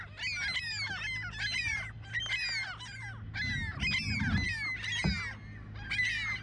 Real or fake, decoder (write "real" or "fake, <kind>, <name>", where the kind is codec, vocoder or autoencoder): real